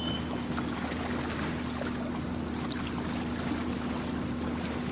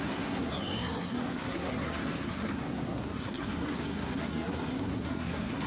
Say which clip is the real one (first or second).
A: first